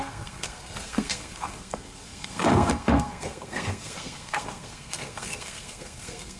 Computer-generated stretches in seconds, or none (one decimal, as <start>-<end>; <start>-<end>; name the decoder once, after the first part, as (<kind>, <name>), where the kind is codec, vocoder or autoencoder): 0.0-6.4 (codec, SNAC)